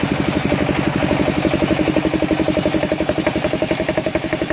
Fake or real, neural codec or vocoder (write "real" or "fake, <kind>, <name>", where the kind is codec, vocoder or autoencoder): real